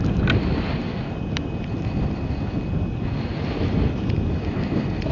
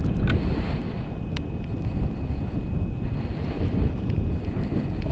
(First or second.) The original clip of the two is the first